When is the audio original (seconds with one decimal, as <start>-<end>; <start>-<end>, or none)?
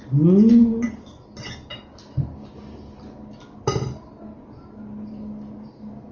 0.0-6.1